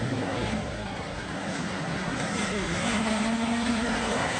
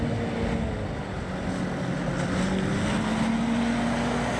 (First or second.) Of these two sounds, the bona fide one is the second